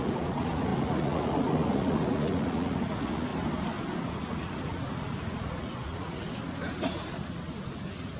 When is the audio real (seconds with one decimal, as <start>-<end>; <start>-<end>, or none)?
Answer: 3.3-4.1

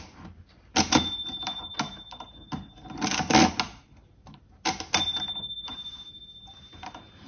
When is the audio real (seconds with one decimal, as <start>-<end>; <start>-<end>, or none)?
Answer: 0.0-7.3